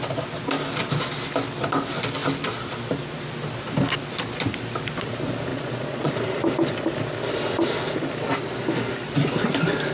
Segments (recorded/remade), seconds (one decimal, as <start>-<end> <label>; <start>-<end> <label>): 0.0-5.5 recorded; 5.5-6.1 remade; 6.1-9.9 recorded